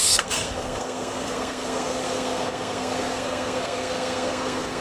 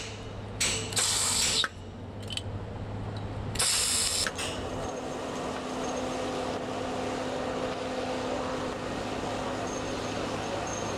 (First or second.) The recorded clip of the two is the second